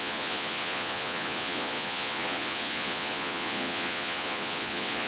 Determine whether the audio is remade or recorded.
remade